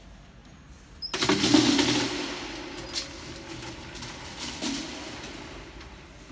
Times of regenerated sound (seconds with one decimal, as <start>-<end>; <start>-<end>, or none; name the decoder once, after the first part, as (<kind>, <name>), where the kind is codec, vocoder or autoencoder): none